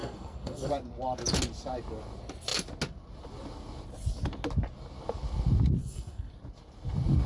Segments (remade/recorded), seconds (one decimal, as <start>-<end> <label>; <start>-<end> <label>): 0.0-0.7 remade; 0.7-5.8 recorded; 5.8-6.3 remade; 6.3-7.3 recorded